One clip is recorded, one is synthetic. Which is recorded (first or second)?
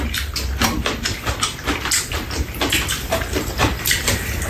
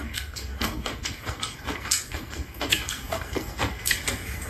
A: first